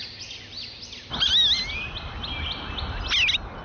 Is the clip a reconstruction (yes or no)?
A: no